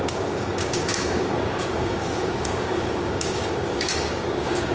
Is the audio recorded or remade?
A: remade